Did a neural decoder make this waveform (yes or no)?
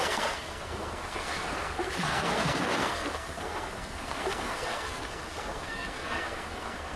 yes